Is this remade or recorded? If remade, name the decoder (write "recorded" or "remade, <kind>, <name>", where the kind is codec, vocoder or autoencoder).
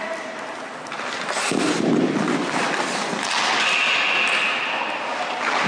recorded